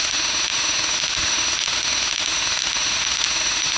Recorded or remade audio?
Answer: remade